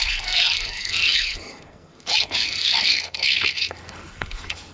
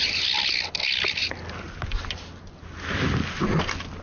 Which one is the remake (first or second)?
first